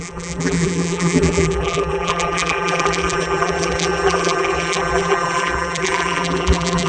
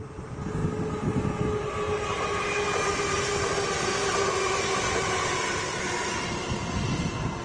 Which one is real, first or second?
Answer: second